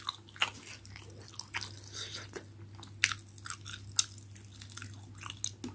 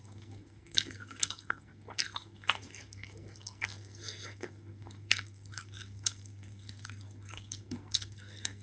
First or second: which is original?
first